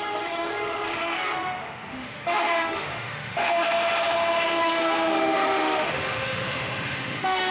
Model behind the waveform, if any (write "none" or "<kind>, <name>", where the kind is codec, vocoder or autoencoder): autoencoder, DAC-VAE